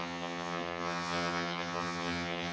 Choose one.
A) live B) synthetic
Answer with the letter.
B